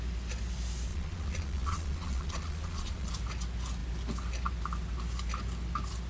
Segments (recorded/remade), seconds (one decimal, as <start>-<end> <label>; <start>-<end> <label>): 0.0-0.9 recorded; 0.9-3.1 remade; 3.1-6.1 recorded